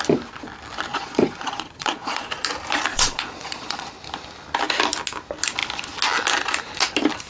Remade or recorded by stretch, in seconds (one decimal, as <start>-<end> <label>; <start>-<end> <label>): 0.0-0.9 recorded; 0.9-2.3 remade; 2.3-2.9 recorded; 2.9-3.9 remade; 3.9-7.3 recorded